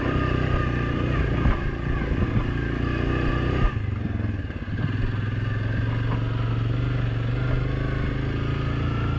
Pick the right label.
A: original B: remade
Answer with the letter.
A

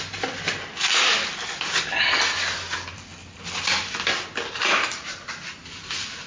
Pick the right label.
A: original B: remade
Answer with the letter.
A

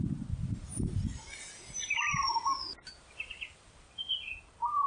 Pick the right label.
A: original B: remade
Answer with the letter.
A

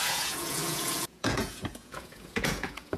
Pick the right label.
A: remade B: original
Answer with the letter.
A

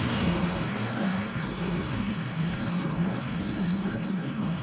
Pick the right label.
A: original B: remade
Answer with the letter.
B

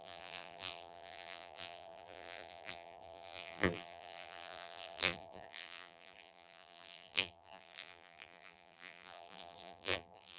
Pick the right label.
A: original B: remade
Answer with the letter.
B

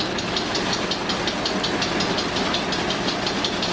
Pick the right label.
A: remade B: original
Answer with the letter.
B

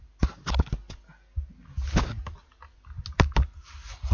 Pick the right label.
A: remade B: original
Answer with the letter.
B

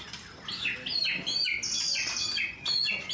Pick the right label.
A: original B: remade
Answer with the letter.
A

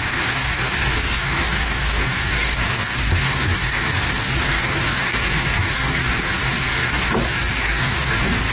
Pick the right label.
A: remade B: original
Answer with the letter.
A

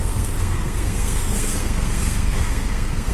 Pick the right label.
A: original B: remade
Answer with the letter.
B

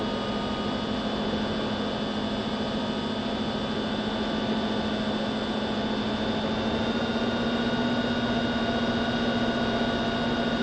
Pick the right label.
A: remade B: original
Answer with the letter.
B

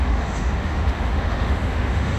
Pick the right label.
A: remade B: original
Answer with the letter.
A